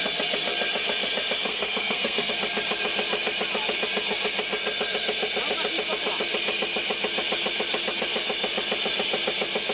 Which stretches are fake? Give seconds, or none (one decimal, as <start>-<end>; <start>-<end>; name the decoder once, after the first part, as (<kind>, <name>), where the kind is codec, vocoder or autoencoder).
1.5-2.3 (codec, SNAC)